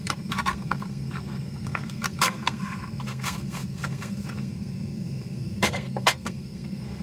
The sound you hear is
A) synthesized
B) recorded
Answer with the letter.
A